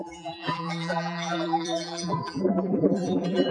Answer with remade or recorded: remade